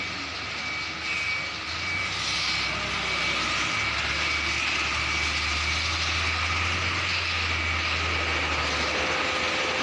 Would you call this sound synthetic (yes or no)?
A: no